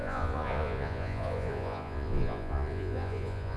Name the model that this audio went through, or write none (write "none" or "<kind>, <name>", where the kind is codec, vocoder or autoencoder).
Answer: vocoder, Vocos